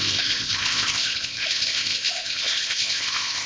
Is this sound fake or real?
fake